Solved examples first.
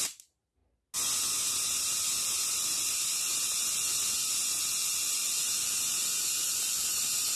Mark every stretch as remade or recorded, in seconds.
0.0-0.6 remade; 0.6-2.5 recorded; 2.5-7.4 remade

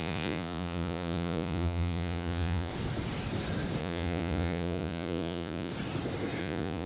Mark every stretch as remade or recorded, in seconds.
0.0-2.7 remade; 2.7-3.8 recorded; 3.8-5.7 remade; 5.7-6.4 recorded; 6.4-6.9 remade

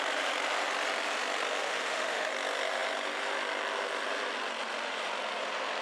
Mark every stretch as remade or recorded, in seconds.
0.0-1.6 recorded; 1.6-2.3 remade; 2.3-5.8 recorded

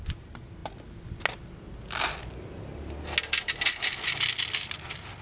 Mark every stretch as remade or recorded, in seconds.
0.0-5.2 recorded

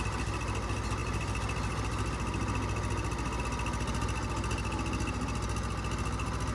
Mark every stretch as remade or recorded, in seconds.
0.0-6.5 recorded